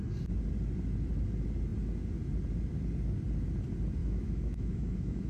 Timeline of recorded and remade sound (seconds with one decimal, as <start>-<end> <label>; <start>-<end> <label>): 0.0-4.0 recorded; 4.0-5.3 remade